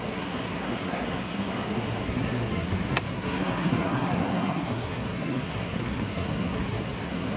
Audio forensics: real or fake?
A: fake